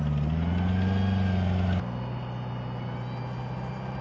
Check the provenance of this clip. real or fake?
real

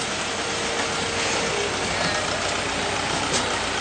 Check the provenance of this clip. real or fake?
real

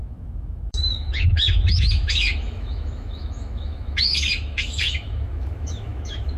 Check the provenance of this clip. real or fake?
fake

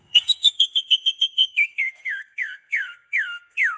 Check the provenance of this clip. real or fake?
fake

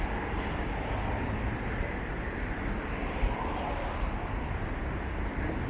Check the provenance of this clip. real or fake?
real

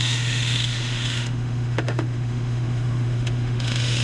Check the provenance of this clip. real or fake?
fake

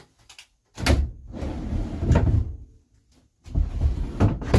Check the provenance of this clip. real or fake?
real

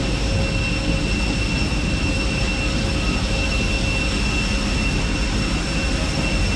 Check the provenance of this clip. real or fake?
real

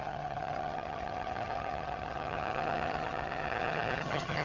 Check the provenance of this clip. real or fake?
fake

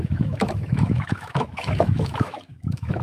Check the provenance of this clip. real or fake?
fake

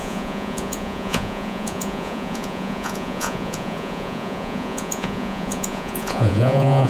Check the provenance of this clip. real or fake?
fake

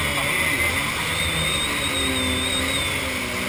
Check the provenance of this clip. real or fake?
real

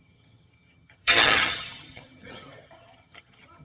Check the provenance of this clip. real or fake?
fake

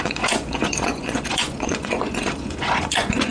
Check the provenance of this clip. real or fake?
fake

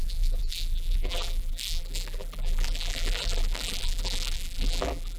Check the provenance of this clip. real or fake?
fake